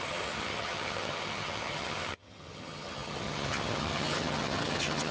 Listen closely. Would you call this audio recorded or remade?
remade